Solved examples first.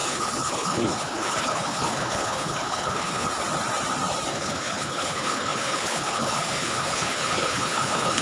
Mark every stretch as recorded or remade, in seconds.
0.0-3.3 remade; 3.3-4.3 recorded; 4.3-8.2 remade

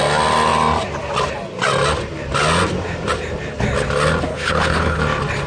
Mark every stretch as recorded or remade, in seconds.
0.0-4.3 recorded; 4.3-5.0 remade; 5.0-5.5 recorded

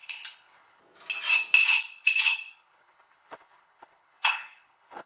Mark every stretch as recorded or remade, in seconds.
0.0-0.8 remade; 0.8-1.6 recorded; 1.6-5.1 remade

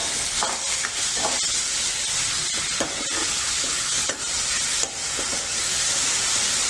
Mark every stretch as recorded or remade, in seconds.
0.0-3.2 recorded; 3.2-4.2 remade; 4.2-6.7 recorded